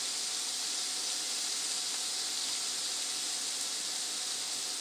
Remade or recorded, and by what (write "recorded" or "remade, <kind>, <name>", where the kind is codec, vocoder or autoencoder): recorded